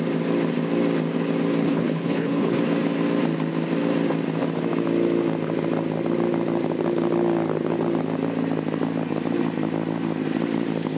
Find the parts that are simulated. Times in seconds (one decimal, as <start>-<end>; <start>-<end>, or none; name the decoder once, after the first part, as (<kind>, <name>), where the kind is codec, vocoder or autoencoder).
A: 1.6-2.6 (codec, HILCodec)